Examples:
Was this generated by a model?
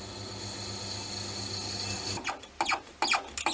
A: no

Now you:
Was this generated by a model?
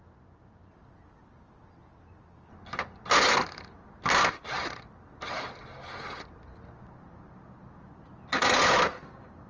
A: no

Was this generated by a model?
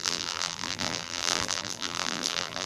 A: yes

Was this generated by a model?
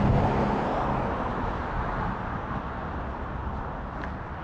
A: no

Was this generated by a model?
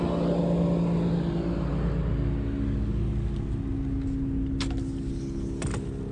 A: no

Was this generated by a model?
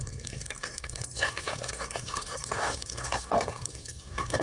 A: yes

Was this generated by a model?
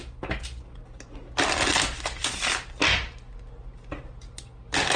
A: no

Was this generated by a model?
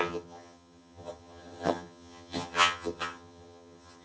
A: yes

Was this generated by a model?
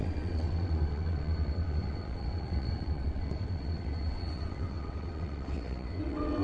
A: yes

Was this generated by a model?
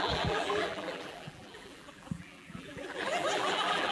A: yes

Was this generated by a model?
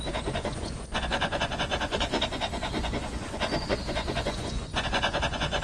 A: yes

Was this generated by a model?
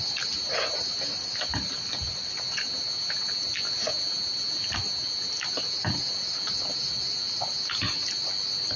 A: no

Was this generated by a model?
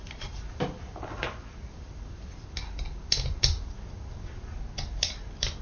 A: no